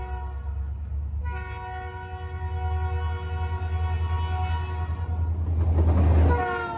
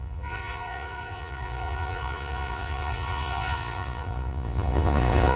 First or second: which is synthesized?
second